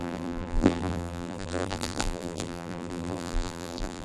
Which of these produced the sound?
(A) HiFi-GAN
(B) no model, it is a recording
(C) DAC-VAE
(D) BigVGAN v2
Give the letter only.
D